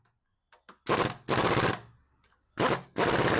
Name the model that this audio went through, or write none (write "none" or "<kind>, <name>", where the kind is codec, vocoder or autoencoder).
none